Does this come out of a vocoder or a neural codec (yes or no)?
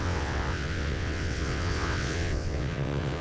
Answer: yes